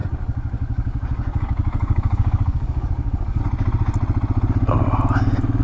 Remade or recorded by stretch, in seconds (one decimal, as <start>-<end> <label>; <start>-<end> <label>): 0.0-3.4 remade; 3.4-5.6 recorded